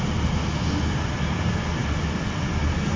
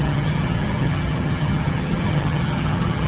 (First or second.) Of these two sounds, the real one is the first